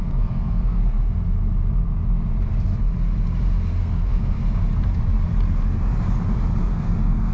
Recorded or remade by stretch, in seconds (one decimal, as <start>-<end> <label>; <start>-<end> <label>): 0.0-0.8 remade; 0.8-3.8 recorded; 3.8-4.4 remade; 4.4-6.6 recorded; 6.6-7.3 remade